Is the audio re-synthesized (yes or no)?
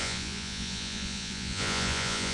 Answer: yes